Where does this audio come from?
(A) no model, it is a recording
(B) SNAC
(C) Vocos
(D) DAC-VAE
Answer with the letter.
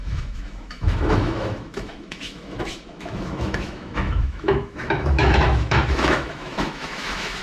D